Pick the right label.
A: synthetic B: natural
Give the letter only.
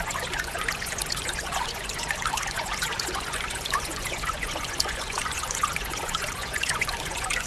A